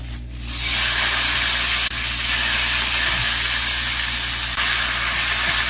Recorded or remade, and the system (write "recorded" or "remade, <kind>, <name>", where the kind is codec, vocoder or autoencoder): recorded